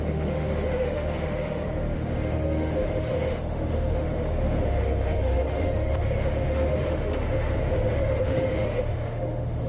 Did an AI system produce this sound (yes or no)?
yes